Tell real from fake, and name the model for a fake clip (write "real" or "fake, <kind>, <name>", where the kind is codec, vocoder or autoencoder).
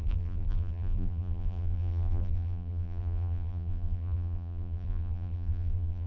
fake, vocoder, BigVGAN v2